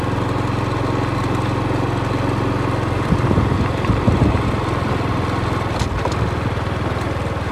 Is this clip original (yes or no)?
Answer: yes